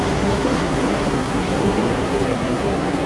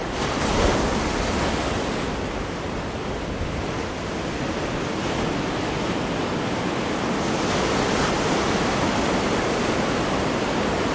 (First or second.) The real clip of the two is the second